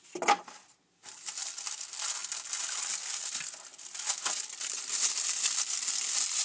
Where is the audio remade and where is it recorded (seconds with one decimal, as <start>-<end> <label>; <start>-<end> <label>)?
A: 0.0-6.4 recorded